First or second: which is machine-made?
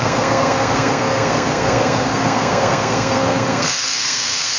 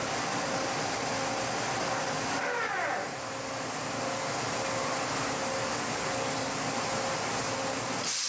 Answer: first